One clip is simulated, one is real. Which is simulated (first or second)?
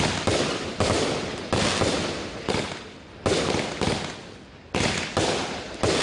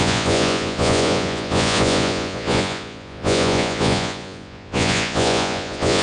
second